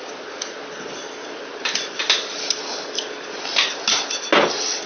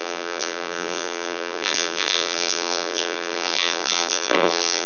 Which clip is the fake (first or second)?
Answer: second